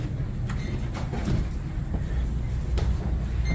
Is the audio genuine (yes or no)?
yes